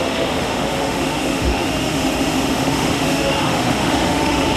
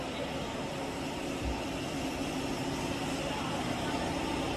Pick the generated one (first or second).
first